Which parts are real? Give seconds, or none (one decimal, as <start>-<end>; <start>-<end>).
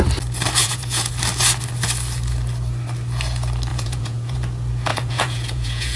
0.0-0.6; 1.1-3.7; 4.4-4.9